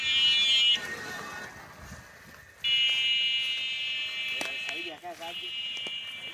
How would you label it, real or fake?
real